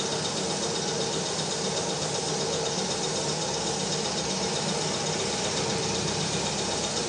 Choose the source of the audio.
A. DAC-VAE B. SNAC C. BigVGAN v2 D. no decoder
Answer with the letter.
D